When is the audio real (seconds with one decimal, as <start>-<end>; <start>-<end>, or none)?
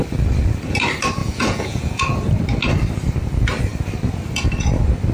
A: 0.0-1.2; 2.0-5.1